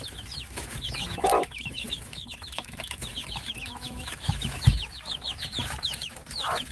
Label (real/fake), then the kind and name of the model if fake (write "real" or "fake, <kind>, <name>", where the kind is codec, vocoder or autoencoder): fake, autoencoder, DAC-VAE